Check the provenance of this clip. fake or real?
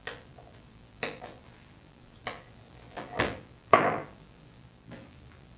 fake